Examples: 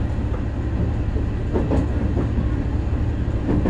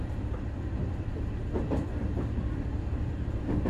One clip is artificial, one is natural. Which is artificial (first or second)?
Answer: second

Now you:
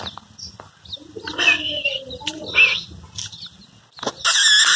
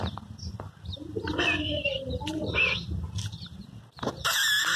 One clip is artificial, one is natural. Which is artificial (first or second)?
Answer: second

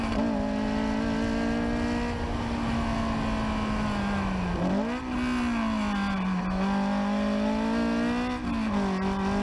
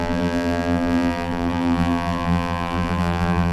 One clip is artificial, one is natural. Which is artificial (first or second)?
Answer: second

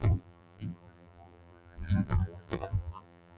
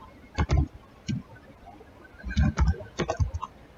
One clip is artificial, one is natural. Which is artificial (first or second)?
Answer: first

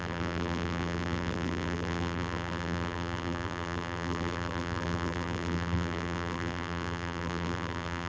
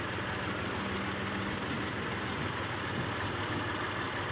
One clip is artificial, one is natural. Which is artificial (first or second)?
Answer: first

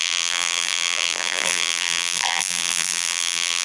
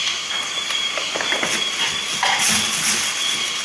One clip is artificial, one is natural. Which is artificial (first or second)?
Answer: first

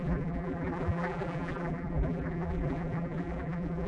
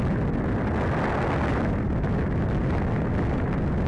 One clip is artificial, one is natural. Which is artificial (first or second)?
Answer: first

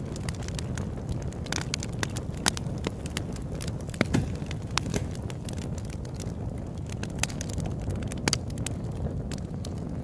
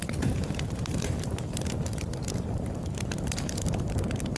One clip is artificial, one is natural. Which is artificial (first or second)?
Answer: second